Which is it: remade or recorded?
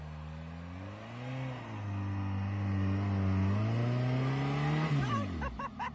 recorded